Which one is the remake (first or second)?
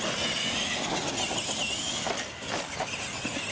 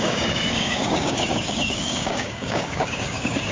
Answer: second